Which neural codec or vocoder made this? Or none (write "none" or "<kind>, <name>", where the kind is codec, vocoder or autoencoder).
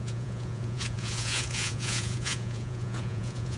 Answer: vocoder, Vocos